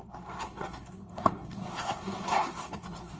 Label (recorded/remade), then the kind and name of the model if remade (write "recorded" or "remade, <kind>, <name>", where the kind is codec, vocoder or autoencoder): remade, codec, SNAC